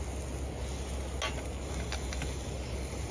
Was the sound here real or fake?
real